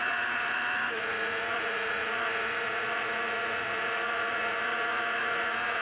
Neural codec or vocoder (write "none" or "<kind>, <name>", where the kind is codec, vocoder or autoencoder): vocoder, Vocos